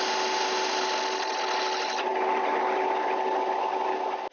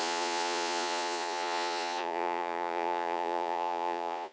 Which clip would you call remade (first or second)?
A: second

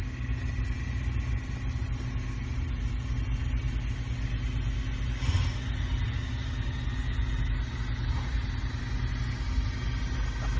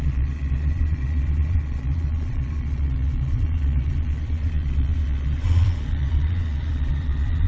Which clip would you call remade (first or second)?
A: second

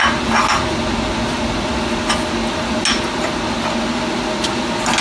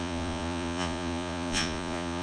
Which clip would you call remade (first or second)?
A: second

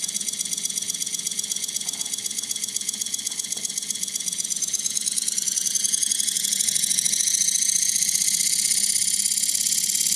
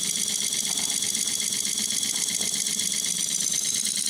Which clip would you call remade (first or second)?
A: first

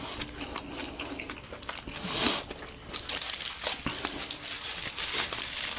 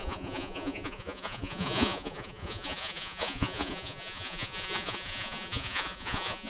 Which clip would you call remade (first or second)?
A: second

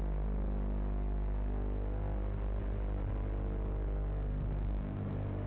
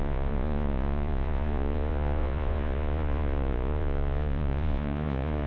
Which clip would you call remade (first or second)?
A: second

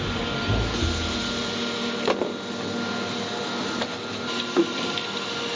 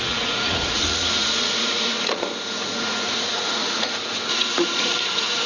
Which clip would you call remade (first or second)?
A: second